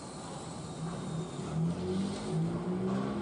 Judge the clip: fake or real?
real